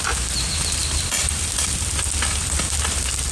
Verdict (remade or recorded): recorded